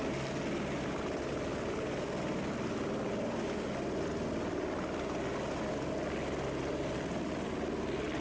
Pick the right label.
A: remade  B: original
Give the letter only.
B